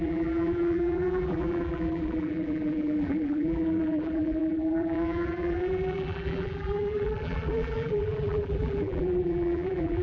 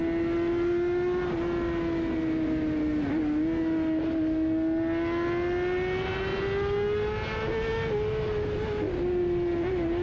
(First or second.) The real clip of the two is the second